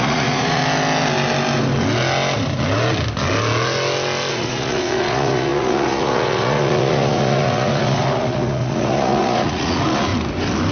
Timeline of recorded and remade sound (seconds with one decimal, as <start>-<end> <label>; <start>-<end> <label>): 0.0-0.6 remade; 0.6-4.3 recorded; 4.3-10.1 remade; 10.1-10.7 recorded